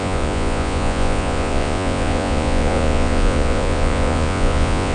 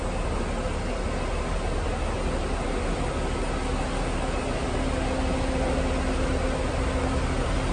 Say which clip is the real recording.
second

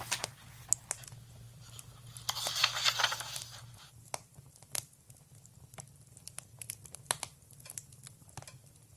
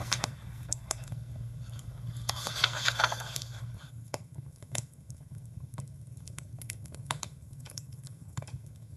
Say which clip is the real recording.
first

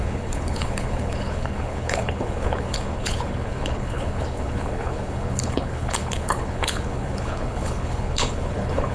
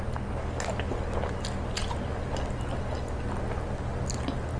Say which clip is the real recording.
second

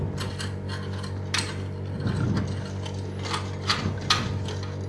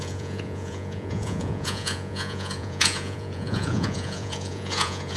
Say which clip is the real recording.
first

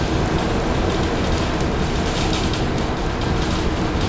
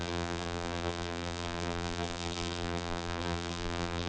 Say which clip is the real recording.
first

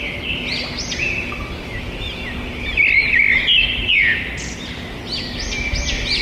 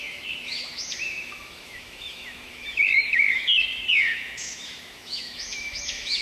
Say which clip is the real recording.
first